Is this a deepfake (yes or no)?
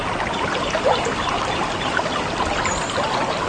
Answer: no